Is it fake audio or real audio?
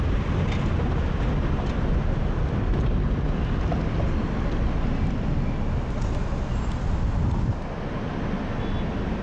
real